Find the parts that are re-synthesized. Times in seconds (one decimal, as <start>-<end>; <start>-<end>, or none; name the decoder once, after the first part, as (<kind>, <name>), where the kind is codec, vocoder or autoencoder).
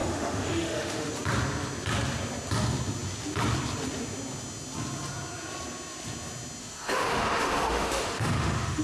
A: 0.0-1.1 (autoencoder, DAC-VAE); 6.6-8.8